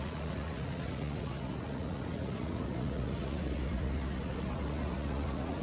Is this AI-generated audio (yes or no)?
yes